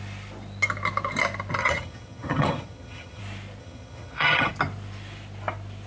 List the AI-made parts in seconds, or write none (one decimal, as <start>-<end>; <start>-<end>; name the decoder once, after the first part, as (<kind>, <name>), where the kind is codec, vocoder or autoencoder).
1.6-3.2 (vocoder, HiFi-GAN); 3.6-4.5